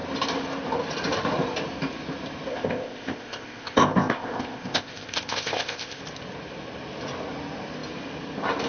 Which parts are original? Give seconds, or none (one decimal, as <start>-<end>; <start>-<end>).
0.0-2.5; 6.0-8.7